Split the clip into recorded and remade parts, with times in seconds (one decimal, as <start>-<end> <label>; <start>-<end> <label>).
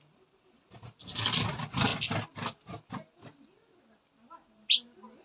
0.0-5.2 recorded